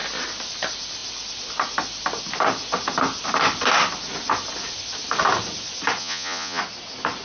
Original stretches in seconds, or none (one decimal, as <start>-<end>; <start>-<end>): 0.0-6.0; 6.6-7.2